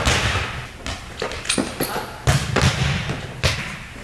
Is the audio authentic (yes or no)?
yes